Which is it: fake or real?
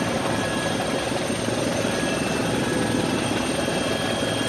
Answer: real